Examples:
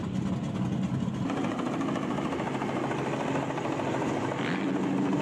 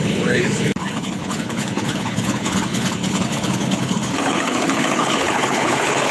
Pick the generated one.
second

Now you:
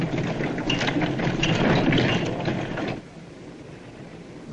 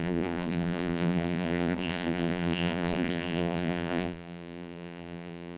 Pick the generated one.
second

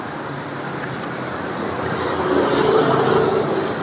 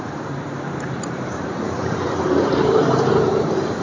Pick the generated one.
second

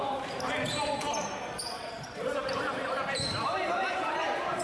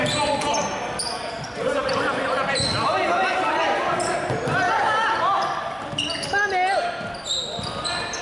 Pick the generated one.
first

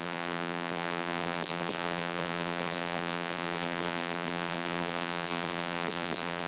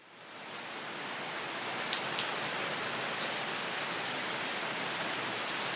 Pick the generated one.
first